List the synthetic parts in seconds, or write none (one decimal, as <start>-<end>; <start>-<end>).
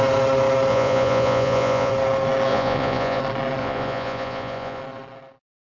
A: 0.7-1.9; 2.5-3.2; 3.6-4.8